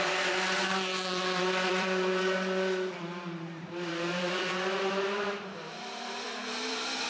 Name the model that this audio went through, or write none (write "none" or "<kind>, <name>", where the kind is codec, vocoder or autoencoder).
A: vocoder, BigVGAN v2